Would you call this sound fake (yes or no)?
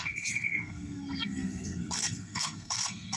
yes